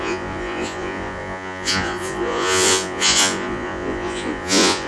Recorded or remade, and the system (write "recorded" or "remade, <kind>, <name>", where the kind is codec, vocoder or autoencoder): remade, vocoder, Vocos